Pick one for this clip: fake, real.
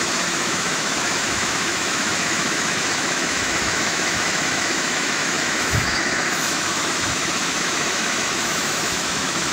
fake